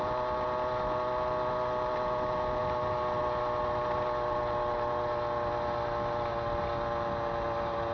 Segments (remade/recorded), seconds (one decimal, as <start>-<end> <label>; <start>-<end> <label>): 0.0-7.9 recorded